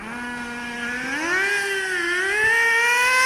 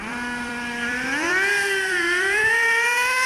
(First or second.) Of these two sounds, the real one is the first